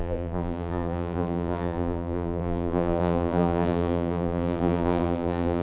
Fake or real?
fake